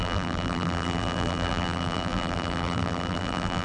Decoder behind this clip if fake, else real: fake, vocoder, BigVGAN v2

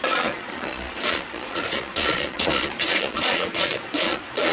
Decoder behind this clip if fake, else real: fake, vocoder, Vocos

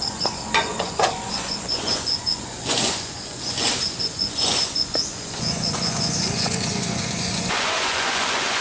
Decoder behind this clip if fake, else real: fake, vocoder, Vocos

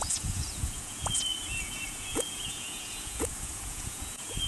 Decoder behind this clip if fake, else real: fake, vocoder, Vocos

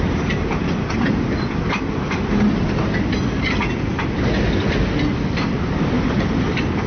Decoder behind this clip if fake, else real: real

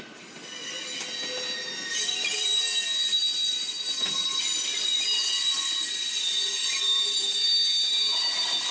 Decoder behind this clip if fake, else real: real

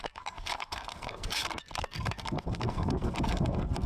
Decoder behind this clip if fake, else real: fake, codec, SNAC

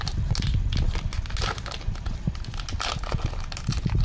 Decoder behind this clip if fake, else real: real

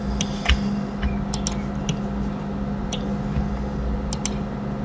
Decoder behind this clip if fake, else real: real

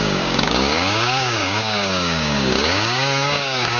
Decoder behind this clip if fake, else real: fake, codec, DAC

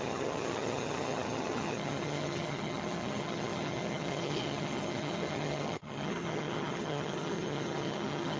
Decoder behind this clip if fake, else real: fake, vocoder, HiFi-GAN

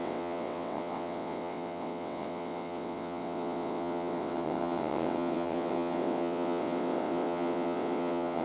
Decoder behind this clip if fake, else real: fake, vocoder, WaveNeXt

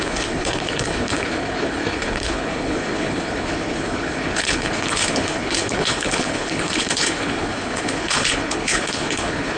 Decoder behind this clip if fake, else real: fake, codec, HILCodec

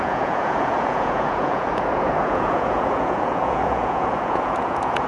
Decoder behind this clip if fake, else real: fake, vocoder, Vocos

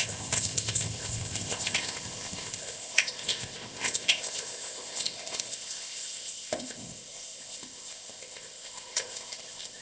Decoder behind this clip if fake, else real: fake, codec, ZipCodec